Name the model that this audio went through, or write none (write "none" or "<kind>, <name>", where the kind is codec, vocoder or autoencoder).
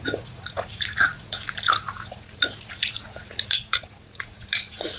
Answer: vocoder, Vocos